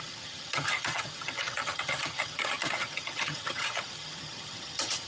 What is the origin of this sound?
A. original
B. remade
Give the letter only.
B